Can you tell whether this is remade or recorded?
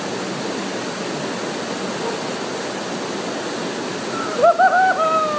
recorded